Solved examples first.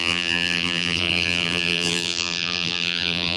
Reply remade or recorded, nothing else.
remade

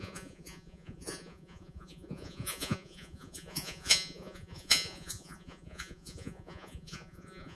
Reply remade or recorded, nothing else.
remade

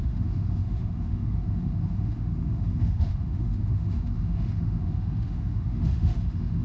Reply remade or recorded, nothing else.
remade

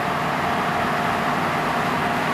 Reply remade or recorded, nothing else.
recorded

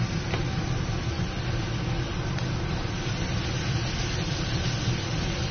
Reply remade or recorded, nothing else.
recorded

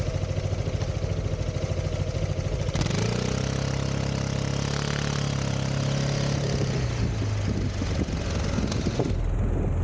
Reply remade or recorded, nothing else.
recorded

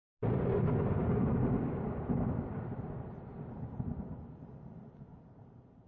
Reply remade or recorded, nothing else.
recorded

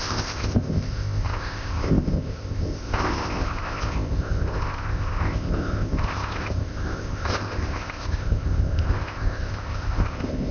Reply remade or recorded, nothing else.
remade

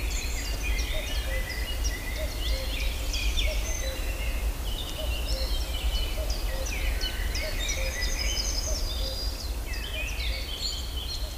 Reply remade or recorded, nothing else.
recorded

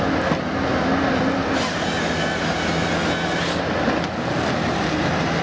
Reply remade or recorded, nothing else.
recorded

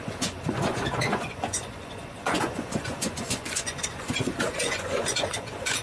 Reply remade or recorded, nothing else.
remade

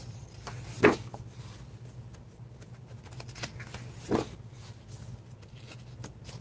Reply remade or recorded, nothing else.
recorded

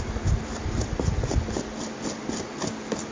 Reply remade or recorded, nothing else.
remade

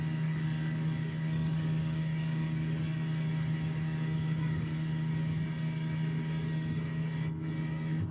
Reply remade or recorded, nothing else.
remade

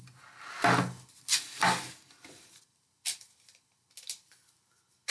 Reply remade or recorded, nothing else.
recorded